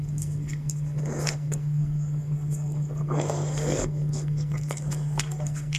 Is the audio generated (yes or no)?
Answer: yes